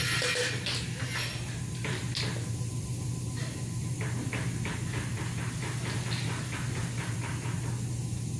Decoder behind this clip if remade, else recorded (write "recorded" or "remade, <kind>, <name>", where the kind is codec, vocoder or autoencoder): recorded